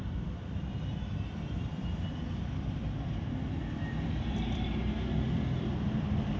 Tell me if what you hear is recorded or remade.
remade